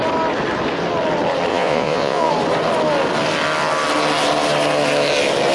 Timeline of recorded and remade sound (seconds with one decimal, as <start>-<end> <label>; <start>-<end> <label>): 0.0-1.5 recorded; 1.5-2.3 remade; 2.3-5.5 recorded